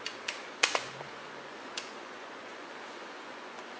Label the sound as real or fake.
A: fake